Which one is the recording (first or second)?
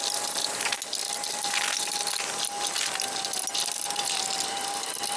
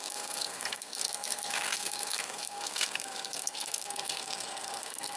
first